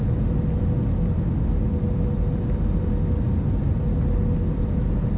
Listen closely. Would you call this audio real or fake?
real